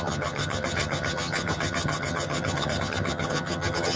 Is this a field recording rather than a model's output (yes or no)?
no